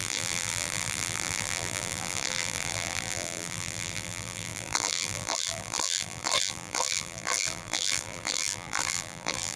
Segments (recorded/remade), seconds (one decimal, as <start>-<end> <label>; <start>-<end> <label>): 0.0-9.6 remade